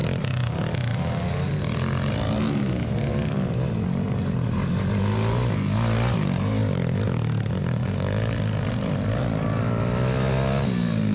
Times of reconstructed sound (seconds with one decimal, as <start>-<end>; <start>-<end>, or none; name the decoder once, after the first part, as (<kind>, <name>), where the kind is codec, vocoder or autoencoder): none